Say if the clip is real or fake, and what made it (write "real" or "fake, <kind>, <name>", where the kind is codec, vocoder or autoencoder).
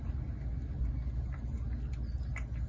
real